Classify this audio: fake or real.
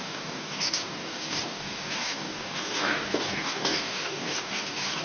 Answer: fake